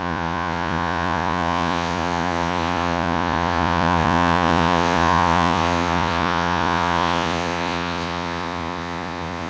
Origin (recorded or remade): remade